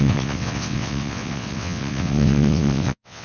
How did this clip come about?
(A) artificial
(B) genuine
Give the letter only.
A